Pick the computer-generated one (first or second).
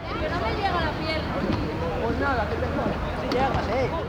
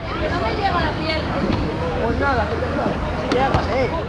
second